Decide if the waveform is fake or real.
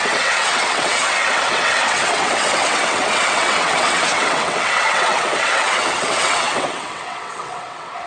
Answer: fake